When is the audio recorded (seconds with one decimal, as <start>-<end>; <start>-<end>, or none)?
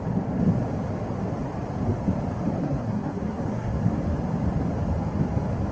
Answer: 0.0-2.6; 3.8-5.7